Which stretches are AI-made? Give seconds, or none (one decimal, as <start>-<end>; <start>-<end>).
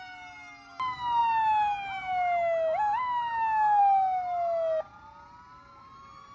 none